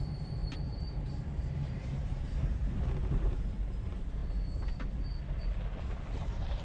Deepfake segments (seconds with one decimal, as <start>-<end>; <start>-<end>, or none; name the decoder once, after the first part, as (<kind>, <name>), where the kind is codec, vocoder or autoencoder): 0.0-4.2 (vocoder, BigVGAN v2); 6.1-6.6

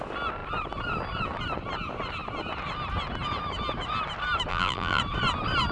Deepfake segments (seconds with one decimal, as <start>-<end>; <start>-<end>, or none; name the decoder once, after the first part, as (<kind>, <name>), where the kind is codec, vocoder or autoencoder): 4.5-5.0 (vocoder, BigVGAN v2)